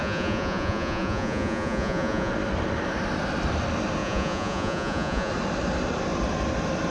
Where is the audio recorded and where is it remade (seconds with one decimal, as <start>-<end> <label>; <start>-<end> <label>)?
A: 0.0-2.3 remade; 2.3-4.0 recorded; 4.0-5.3 remade; 5.3-6.9 recorded